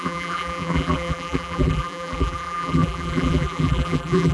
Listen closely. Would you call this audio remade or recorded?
remade